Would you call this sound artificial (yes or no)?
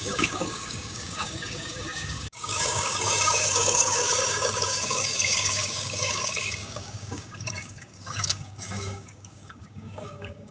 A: yes